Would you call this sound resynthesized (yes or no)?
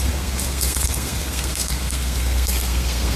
yes